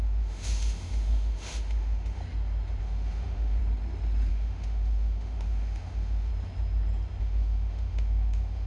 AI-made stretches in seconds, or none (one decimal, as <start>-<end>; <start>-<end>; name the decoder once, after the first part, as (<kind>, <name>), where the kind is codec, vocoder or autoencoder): 0.0-2.2 (autoencoder, DAC-VAE); 2.8-3.6; 4.3-6.3; 7.2-8.7